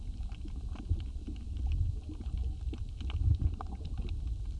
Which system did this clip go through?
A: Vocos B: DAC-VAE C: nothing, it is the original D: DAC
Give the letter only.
C